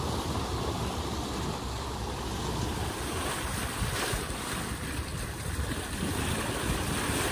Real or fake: fake